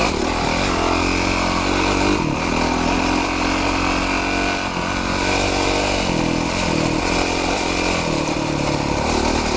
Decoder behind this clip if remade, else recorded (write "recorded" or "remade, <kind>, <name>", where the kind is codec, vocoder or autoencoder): recorded